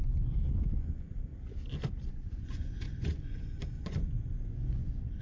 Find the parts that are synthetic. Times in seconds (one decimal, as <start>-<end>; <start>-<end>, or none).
0.0-1.3; 2.1-5.2

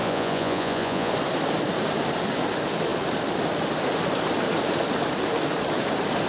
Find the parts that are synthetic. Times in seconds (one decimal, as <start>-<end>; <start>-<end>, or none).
0.0-1.1

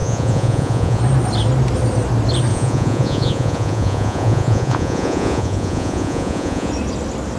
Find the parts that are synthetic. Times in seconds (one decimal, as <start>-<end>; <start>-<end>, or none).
0.0-1.0; 2.5-6.7

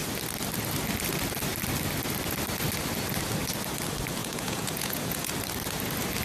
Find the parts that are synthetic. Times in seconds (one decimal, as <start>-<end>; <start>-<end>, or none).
4.2-5.3

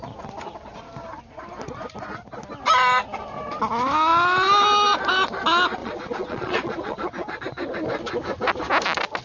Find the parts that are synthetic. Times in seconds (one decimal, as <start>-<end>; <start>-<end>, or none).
5.8-7.4

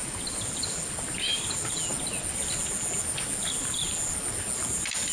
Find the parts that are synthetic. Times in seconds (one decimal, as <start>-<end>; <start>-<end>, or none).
none

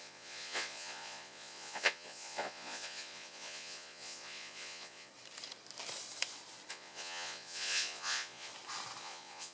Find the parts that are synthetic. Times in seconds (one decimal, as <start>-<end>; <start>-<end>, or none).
0.0-5.1; 6.7-8.5; 9.0-9.5

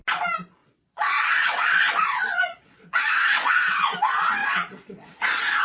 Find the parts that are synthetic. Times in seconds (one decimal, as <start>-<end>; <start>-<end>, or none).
0.6-3.7; 4.4-5.6